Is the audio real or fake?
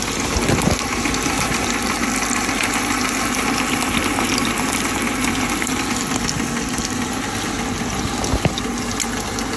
real